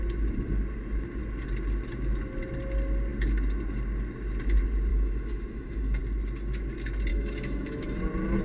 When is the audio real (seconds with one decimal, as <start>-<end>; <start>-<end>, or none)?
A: 0.0-4.9; 6.0-7.1; 8.0-8.4